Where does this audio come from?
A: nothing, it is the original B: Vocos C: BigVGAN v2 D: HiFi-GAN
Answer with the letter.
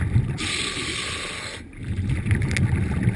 A